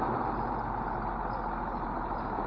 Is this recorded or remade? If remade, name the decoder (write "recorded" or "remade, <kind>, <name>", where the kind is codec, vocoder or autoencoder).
recorded